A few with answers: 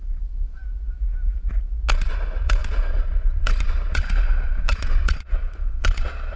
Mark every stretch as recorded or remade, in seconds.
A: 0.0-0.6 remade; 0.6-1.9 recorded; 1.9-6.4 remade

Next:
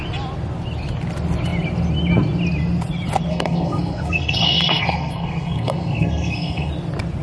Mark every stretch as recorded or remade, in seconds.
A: 0.0-3.3 recorded; 3.3-6.7 remade; 6.7-7.2 recorded